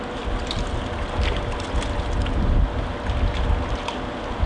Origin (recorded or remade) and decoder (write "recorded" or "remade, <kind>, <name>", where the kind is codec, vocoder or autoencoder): recorded